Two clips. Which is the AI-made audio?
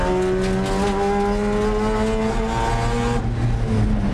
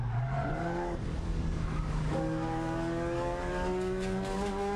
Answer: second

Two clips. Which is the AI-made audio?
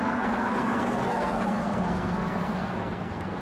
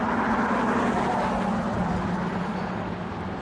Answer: first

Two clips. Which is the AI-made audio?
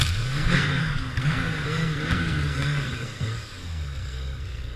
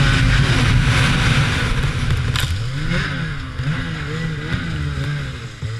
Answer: first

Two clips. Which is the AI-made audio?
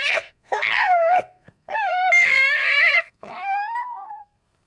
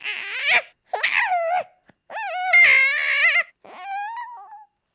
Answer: first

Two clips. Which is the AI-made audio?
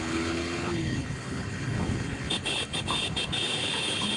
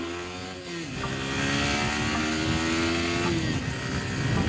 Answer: first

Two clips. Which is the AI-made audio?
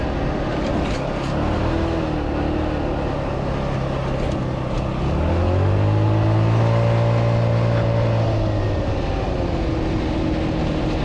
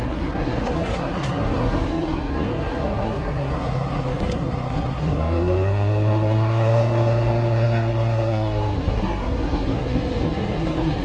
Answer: second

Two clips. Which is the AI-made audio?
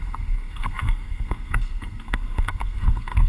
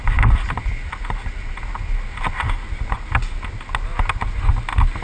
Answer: first